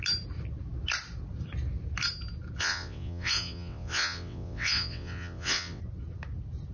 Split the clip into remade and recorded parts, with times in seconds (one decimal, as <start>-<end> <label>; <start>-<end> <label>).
0.0-2.6 recorded; 2.6-5.8 remade; 5.8-6.7 recorded